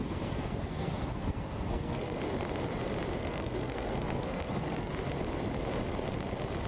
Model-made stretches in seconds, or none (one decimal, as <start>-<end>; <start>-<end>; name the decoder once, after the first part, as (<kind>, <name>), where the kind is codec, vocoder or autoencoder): 0.0-2.2 (codec, SNAC); 3.2-4.9